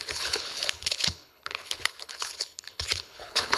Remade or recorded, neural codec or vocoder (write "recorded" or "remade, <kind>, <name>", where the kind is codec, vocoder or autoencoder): remade, codec, HILCodec